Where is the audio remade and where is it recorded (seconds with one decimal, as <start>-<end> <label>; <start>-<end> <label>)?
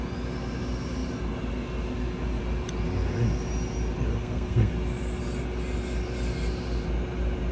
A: 0.0-4.1 recorded; 4.1-4.7 remade; 4.7-7.5 recorded